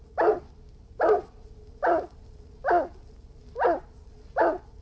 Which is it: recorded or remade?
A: recorded